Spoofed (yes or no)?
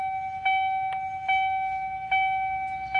no